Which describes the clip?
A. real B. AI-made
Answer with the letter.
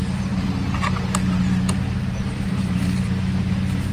B